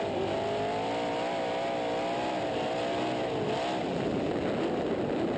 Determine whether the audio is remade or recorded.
recorded